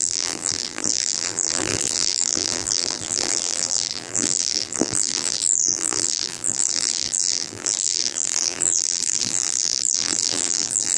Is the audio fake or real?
fake